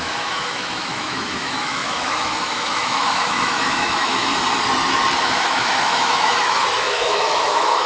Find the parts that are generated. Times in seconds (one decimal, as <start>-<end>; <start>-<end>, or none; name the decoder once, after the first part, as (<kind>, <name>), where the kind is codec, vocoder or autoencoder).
0.0-4.3 (autoencoder, DAC-VAE); 5.2-7.9